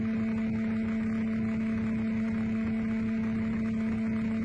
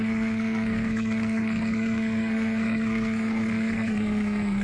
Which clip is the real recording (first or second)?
first